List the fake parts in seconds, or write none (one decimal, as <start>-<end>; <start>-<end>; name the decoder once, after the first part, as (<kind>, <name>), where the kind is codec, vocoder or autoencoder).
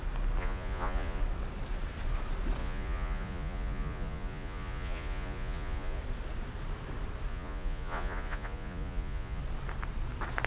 0.4-1.2 (vocoder, Vocos); 2.6-6.0; 7.3-9.4